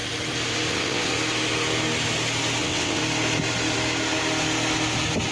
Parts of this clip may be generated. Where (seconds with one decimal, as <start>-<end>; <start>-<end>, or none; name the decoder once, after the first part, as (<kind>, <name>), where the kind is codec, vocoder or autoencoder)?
0.7-1.1 (vocoder, WaveNeXt); 2.6-3.0